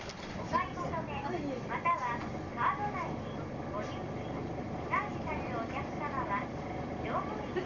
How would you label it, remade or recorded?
recorded